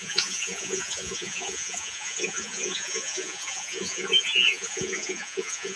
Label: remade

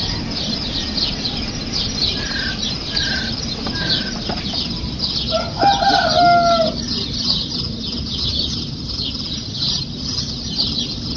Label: recorded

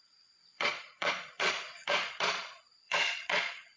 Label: remade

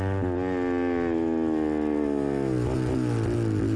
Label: recorded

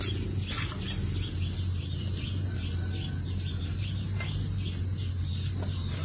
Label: recorded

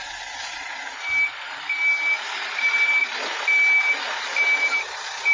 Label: recorded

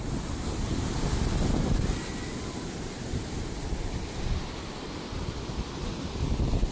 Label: recorded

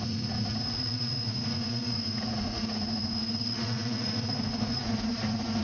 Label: remade